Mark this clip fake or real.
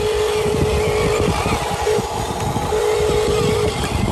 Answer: real